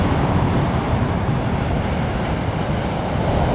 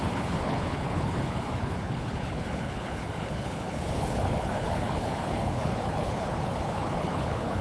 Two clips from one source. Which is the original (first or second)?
first